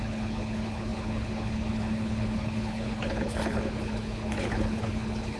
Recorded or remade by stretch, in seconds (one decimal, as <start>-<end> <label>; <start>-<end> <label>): 0.0-5.4 remade

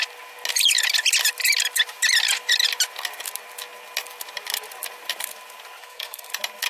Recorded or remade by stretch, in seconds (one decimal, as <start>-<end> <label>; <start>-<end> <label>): 0.0-5.8 recorded; 5.8-6.3 remade; 6.3-6.7 recorded

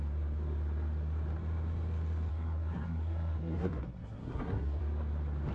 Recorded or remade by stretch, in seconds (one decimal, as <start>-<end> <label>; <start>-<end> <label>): 0.0-2.3 recorded; 2.3-4.8 remade; 4.8-5.5 recorded